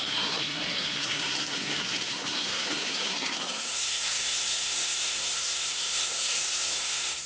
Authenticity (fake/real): fake